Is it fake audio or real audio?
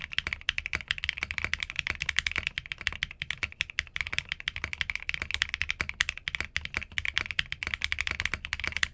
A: real